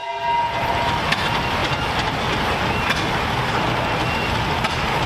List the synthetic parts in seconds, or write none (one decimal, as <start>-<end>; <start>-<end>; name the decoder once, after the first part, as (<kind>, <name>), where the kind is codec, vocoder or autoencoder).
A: none